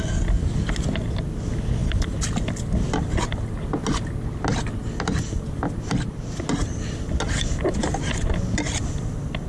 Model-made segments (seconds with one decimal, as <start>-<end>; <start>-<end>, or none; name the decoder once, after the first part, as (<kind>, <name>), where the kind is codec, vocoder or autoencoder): none